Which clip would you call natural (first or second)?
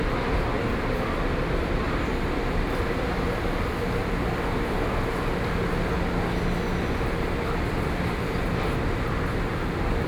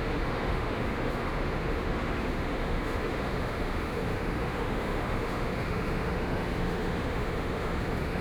first